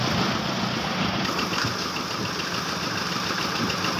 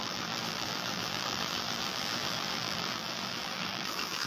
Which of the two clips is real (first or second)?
first